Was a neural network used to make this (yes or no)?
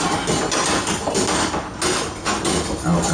no